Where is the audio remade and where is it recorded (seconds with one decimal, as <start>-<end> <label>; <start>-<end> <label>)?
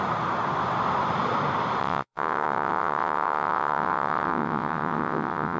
0.0-1.8 recorded; 1.8-5.6 remade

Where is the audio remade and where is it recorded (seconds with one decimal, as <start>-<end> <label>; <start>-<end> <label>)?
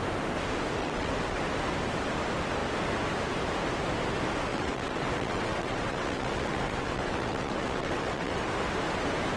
0.0-0.8 recorded; 0.8-1.4 remade; 1.4-4.5 recorded; 4.5-8.4 remade; 8.4-9.4 recorded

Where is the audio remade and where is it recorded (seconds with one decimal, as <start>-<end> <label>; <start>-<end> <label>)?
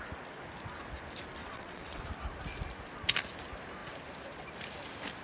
0.0-1.4 recorded; 1.4-2.0 remade; 2.0-5.2 recorded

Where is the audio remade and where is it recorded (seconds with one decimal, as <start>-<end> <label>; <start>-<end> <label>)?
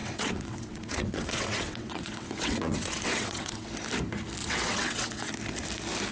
0.0-3.7 remade; 3.7-4.4 recorded; 4.4-5.3 remade; 5.3-6.1 recorded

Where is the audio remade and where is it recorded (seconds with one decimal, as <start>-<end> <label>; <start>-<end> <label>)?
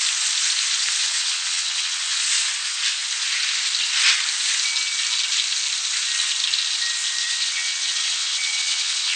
0.0-1.0 recorded; 1.0-2.2 remade; 2.2-7.2 recorded; 7.2-9.2 remade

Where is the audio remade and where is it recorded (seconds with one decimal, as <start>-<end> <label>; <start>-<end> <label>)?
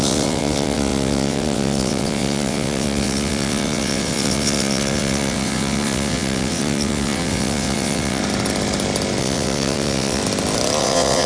0.0-8.2 remade; 8.2-9.2 recorded; 9.2-10.2 remade; 10.2-10.8 recorded; 10.8-11.3 remade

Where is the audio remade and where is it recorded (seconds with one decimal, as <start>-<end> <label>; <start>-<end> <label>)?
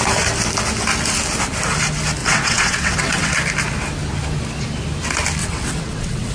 0.0-2.2 recorded; 2.2-3.3 remade; 3.3-5.4 recorded; 5.4-6.3 remade